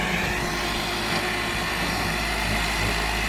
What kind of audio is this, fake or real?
real